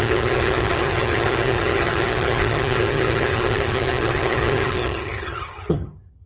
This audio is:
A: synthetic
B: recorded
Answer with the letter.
A